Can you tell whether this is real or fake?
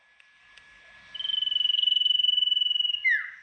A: real